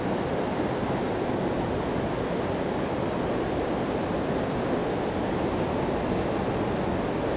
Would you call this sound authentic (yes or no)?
yes